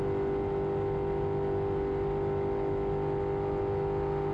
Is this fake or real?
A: real